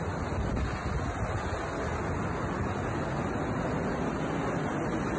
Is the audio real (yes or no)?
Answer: yes